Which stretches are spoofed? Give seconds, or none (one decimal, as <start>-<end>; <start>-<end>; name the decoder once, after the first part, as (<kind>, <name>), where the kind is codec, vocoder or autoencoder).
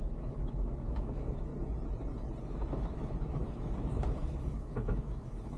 0.0-1.5 (autoencoder, DAC-VAE); 2.4-5.6